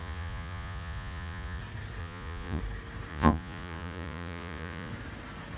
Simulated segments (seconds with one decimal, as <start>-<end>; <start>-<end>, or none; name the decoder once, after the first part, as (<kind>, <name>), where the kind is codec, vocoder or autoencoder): 0.0-1.6 (vocoder, Vocos); 2.0-2.6; 3.1-4.9